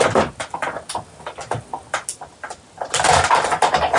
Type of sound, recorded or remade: recorded